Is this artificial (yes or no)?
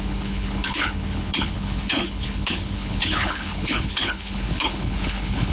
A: yes